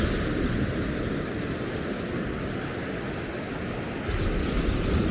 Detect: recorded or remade recorded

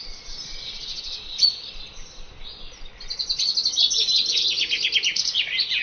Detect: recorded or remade recorded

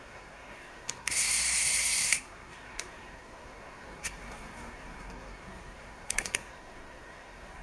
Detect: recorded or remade remade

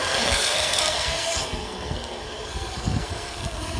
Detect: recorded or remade remade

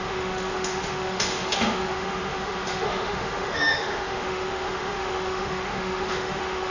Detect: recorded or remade remade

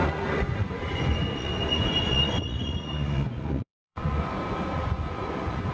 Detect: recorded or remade remade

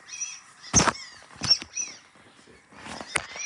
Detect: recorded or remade recorded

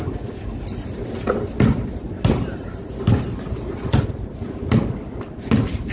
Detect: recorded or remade recorded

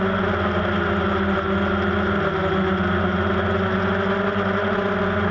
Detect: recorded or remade recorded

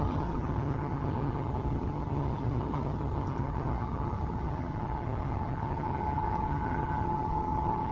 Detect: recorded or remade remade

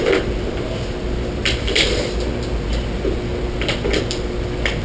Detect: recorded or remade recorded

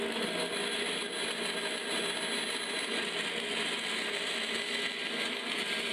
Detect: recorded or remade recorded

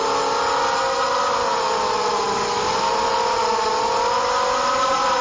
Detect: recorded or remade recorded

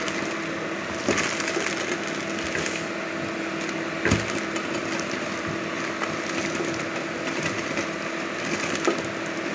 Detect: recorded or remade recorded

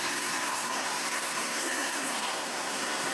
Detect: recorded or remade remade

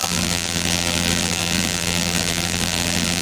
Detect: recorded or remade remade